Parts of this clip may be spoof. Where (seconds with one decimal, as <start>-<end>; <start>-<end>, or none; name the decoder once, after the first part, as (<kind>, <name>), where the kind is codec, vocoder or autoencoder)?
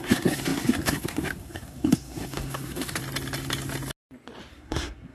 0.0-3.0 (codec, SNAC); 4.5-5.1